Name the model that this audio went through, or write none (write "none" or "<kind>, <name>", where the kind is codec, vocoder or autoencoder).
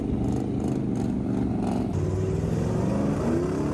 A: none